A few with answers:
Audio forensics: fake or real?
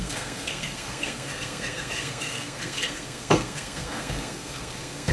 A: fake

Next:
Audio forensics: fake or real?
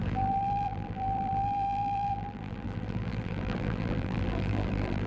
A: fake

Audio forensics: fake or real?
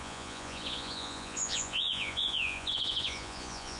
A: fake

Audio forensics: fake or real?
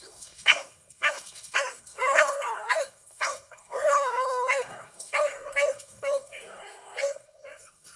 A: fake